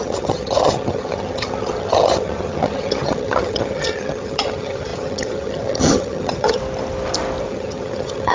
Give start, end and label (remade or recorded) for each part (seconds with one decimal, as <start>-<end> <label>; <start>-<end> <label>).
0.0-6.6 remade; 6.6-7.5 recorded; 7.5-8.3 remade